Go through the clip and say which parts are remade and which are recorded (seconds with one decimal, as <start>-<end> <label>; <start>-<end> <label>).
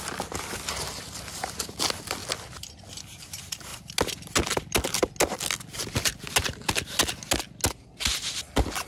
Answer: 0.0-8.1 recorded; 8.1-8.9 remade